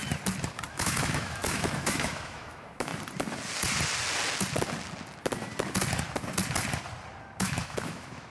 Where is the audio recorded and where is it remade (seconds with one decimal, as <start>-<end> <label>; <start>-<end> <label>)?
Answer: 0.0-0.7 recorded; 0.7-2.9 remade; 2.9-7.4 recorded; 7.4-8.3 remade